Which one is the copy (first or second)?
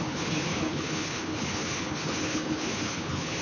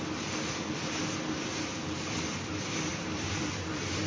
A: first